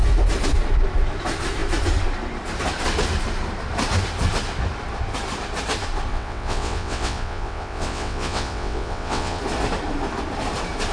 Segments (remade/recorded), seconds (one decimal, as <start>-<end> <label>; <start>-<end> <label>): 0.0-6.1 recorded; 6.1-9.4 remade; 9.4-10.9 recorded